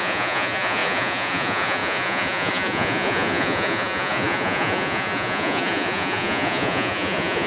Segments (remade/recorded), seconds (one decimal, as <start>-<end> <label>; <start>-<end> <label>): 0.0-7.5 remade